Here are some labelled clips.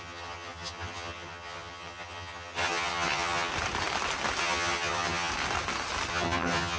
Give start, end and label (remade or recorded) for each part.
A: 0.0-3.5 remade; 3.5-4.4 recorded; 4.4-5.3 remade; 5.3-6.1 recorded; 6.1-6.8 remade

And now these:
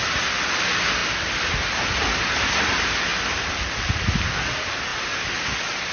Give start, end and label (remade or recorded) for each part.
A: 0.0-5.9 recorded

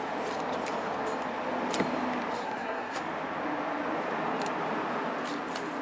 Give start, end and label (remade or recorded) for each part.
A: 0.0-2.4 recorded; 2.4-3.0 remade; 3.0-5.8 recorded

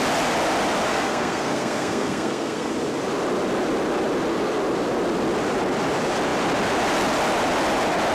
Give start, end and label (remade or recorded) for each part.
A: 0.0-0.9 recorded; 0.9-2.7 remade; 2.7-8.1 recorded

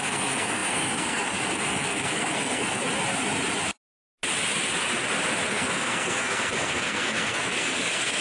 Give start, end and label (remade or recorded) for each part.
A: 0.0-2.8 remade; 2.8-5.5 recorded; 5.5-8.2 remade

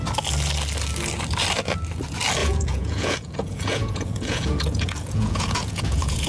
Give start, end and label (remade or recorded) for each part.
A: 0.0-2.4 recorded; 2.4-6.3 remade